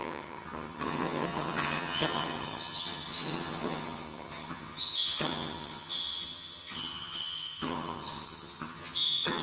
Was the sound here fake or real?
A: fake